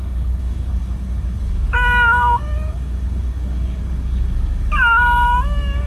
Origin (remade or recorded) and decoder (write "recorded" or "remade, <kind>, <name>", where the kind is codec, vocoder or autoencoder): remade, codec, DAC